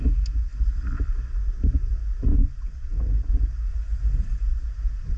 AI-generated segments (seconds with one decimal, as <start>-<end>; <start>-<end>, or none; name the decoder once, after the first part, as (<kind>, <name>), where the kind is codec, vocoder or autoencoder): 2.3-3.3 (vocoder, Vocos); 3.7-5.2